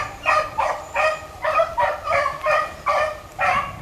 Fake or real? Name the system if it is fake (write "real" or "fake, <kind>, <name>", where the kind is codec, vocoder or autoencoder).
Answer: fake, vocoder, BigVGAN v2